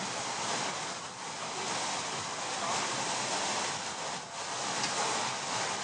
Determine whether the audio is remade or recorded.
recorded